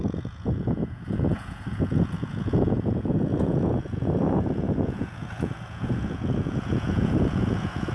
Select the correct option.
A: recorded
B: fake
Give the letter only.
B